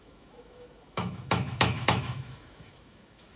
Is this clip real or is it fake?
fake